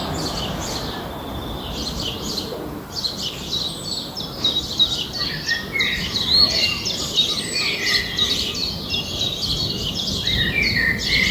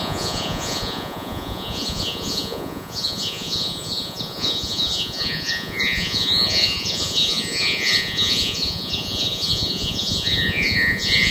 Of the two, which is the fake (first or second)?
second